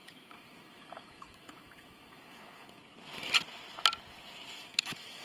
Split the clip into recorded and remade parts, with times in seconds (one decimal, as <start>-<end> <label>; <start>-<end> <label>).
0.0-2.8 remade; 2.8-4.6 recorded; 4.6-5.2 remade